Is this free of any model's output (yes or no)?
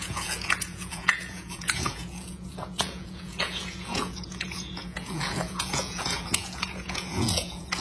no